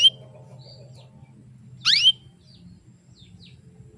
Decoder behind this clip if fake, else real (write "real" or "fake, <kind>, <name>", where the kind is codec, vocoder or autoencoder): real